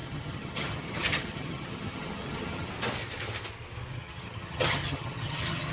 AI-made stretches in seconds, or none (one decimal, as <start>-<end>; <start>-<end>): 0.0-2.7; 3.9-5.7